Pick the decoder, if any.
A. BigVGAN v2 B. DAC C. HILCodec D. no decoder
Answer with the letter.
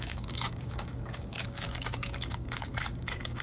B